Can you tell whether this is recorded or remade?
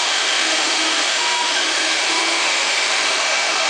remade